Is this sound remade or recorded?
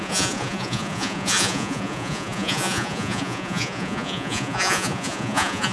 remade